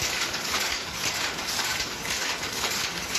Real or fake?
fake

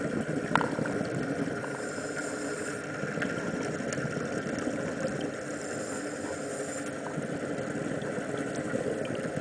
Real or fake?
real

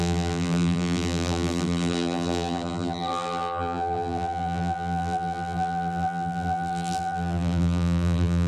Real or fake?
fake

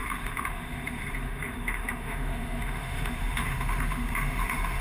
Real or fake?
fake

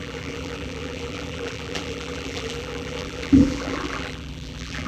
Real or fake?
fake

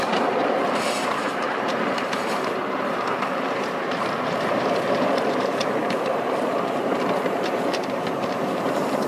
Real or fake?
fake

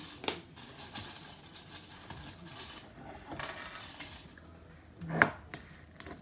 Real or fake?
real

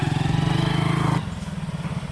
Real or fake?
real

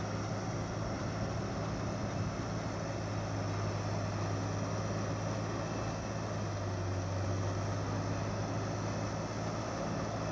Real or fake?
real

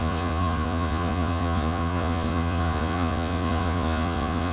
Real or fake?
fake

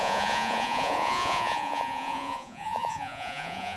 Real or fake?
fake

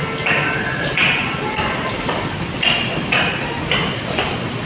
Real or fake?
real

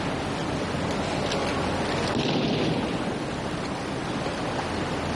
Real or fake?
real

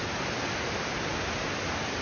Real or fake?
real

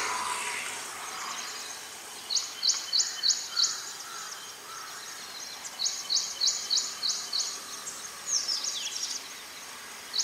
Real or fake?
real